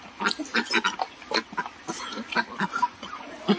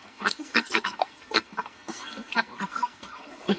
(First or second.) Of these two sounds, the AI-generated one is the second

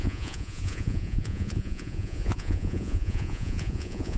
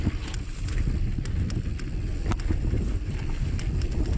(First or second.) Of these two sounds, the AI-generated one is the first